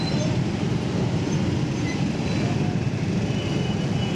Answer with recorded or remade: recorded